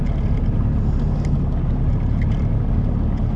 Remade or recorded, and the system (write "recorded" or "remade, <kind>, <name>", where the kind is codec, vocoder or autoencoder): recorded